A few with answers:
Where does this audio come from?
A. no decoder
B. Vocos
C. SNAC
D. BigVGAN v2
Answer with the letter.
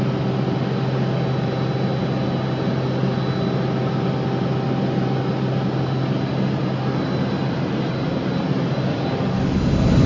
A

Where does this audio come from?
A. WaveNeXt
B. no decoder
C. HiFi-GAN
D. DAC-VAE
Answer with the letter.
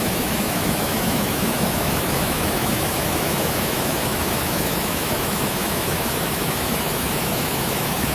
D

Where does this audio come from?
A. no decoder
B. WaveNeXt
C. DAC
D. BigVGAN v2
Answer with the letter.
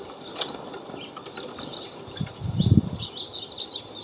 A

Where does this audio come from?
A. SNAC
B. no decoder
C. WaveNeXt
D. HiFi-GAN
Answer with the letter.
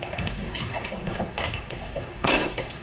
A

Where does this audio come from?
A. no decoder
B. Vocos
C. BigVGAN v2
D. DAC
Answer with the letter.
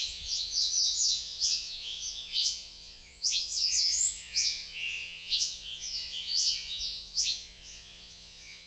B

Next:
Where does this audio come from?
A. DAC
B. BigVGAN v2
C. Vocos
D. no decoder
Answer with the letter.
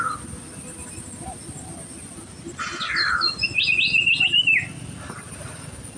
D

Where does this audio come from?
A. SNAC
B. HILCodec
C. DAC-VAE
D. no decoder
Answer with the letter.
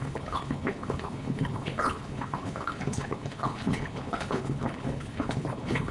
B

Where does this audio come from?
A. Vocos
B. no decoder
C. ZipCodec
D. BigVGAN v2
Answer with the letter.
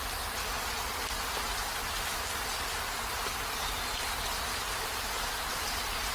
B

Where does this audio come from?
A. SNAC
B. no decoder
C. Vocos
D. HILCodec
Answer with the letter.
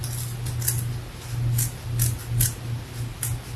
B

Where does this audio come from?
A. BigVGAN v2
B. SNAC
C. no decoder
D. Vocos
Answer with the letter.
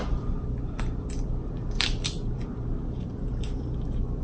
A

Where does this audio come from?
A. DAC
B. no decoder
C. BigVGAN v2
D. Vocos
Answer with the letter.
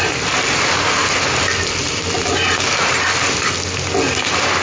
B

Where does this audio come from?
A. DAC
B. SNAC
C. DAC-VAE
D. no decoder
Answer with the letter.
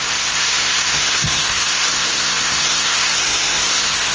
B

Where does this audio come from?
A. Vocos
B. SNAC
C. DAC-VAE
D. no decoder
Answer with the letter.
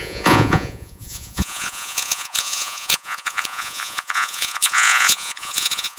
A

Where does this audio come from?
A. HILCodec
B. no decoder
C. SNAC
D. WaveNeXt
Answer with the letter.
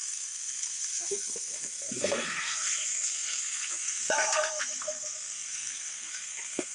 C